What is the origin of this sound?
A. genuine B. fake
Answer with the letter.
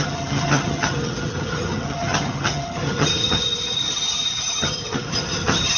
B